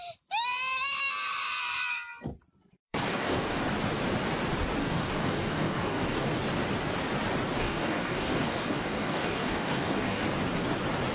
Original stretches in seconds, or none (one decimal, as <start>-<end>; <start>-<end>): 0.0-2.8; 3.6-4.8; 6.4-7.6; 10.3-11.1